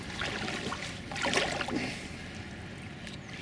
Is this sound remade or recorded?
recorded